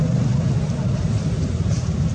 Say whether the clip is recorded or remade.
recorded